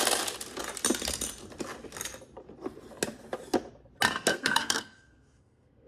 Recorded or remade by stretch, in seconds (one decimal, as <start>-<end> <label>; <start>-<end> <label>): 0.0-4.3 recorded; 4.3-5.9 remade